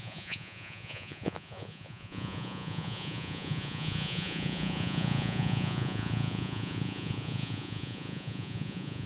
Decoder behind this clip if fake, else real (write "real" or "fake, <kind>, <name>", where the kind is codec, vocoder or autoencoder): fake, vocoder, Vocos